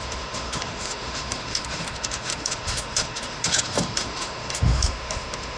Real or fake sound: fake